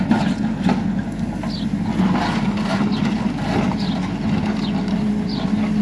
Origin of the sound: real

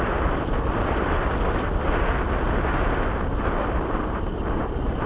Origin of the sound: real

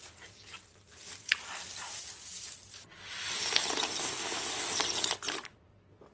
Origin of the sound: real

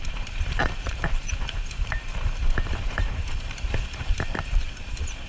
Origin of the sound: fake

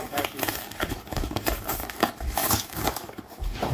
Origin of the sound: fake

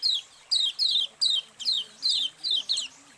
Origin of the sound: real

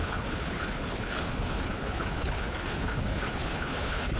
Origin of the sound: fake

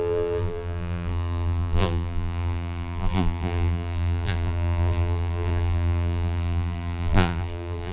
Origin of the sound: fake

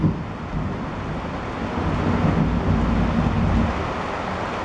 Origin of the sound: real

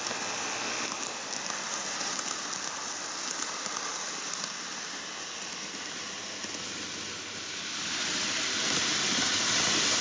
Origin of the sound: real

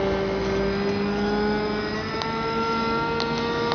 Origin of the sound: real